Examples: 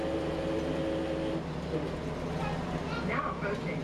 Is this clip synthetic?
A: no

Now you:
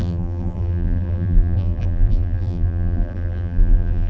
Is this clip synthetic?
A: yes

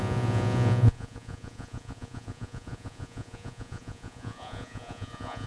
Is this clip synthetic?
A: yes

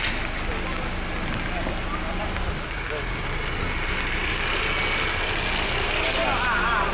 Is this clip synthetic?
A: no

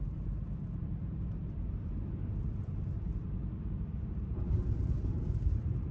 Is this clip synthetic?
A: yes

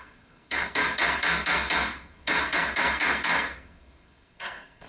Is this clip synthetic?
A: yes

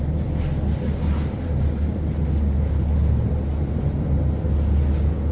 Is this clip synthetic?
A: no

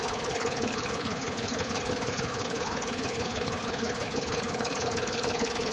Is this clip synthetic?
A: yes